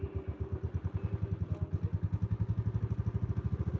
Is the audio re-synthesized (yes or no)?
no